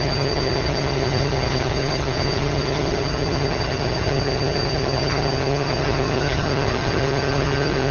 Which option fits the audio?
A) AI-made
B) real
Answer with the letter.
A